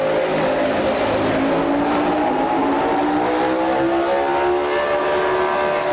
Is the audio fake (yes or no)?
no